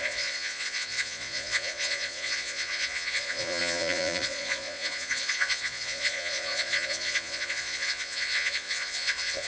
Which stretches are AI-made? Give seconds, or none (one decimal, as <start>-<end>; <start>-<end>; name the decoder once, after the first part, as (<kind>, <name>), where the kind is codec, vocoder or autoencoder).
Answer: 0.0-9.5 (vocoder, Vocos)